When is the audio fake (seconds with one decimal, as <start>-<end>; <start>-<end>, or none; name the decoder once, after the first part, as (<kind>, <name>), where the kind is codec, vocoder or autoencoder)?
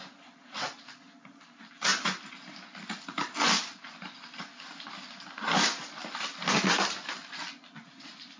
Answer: none